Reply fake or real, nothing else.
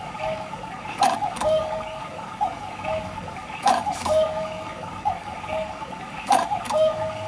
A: fake